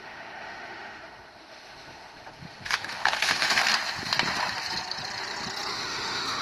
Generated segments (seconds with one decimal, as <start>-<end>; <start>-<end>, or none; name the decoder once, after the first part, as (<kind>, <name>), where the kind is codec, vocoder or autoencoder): 0.0-3.6 (autoencoder, DAC-VAE); 5.7-6.4